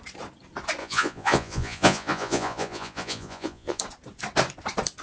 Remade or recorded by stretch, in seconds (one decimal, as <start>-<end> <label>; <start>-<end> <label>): 0.0-0.8 recorded; 0.8-3.8 remade; 3.8-5.0 recorded